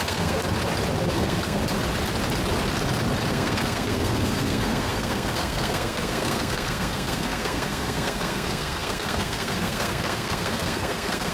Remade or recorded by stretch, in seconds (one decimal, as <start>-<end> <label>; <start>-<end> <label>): 0.0-0.4 remade; 0.4-1.1 recorded; 1.1-1.6 remade; 1.6-3.3 recorded; 3.3-11.3 remade